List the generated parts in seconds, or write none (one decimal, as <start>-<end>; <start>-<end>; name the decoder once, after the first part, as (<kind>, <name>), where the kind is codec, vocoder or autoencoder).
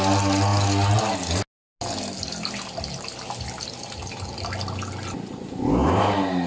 none